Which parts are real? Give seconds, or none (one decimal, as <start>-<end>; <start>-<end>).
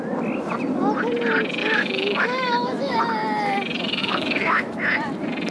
0.0-1.6; 3.0-4.0; 4.8-5.5